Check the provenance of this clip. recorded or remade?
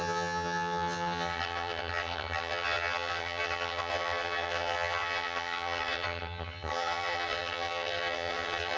remade